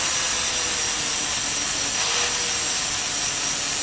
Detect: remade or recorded recorded